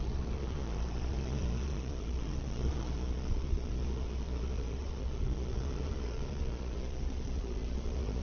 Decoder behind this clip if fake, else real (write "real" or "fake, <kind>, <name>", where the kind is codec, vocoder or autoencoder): fake, vocoder, Vocos